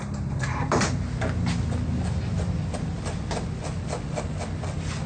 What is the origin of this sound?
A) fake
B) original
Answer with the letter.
B